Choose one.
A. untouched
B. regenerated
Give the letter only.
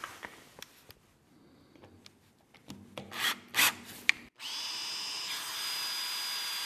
A